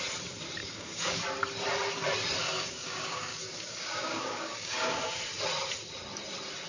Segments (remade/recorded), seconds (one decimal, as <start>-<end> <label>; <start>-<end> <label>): 0.0-0.6 recorded; 0.6-1.2 remade; 1.2-2.4 recorded; 2.4-5.2 remade; 5.2-6.7 recorded